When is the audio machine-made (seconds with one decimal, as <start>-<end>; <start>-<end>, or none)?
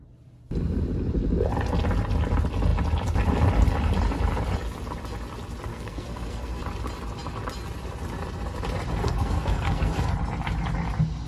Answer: 5.7-6.6; 9.0-10.1